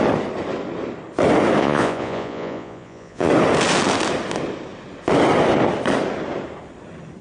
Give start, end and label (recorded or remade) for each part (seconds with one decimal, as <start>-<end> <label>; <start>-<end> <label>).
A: 0.0-1.6 recorded; 1.6-3.3 remade; 3.3-7.2 recorded